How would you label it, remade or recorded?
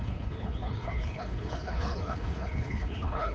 remade